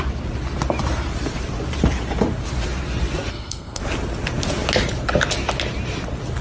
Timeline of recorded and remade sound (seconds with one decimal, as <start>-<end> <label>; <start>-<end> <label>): 0.0-3.3 recorded; 3.3-3.8 remade; 3.8-6.4 recorded